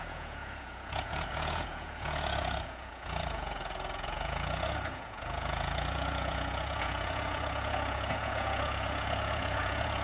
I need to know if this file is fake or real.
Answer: fake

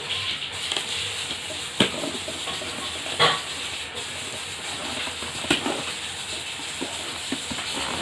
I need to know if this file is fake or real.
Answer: real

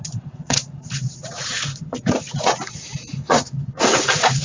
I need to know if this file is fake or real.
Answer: fake